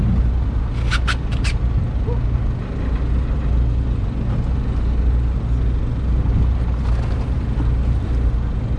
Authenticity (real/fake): real